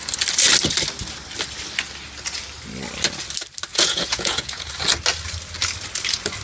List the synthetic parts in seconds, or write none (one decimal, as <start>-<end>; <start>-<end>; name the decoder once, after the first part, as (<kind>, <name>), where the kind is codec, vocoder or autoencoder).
3.7-4.7 (vocoder, Vocos)